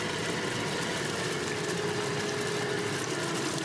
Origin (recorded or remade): recorded